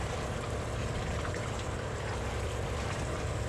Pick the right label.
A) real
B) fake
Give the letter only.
B